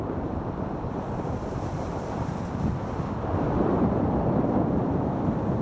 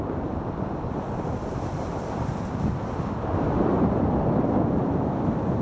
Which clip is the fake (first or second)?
first